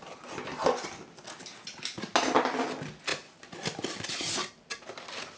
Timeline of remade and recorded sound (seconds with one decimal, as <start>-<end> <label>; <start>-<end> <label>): 0.0-5.4 recorded